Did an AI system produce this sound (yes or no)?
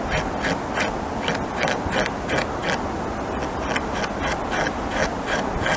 no